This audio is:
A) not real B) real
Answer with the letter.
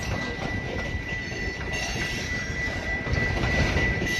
B